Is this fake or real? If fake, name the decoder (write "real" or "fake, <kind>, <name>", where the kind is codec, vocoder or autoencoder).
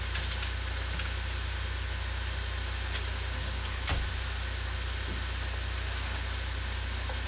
real